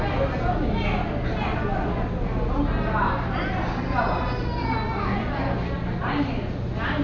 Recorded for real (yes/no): yes